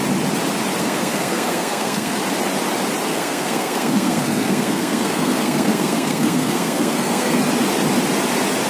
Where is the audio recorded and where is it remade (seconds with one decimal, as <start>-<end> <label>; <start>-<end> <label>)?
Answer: 0.0-0.8 recorded; 0.8-2.2 remade; 2.2-3.1 recorded; 3.1-7.4 remade; 7.4-8.7 recorded